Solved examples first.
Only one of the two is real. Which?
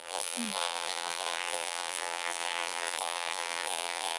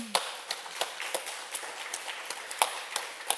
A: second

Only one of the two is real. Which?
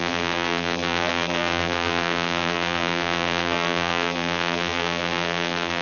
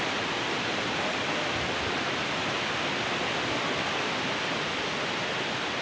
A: second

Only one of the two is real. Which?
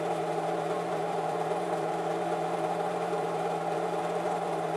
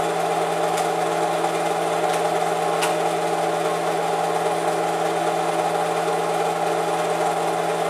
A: second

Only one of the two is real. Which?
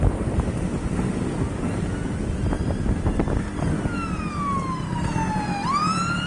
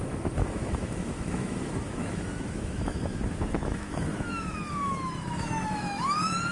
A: first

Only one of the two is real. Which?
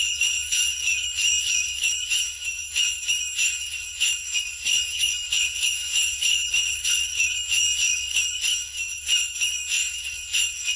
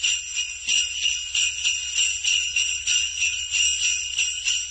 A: second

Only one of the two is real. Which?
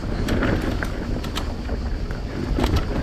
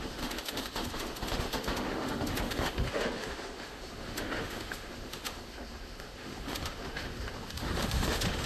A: first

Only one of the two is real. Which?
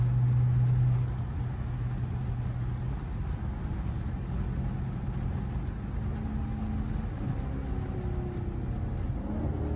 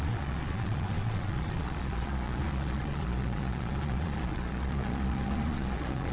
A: first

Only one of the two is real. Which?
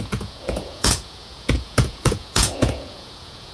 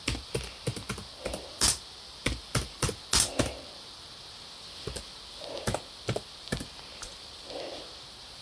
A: second